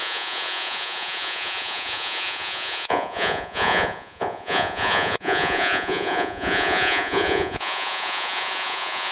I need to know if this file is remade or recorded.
remade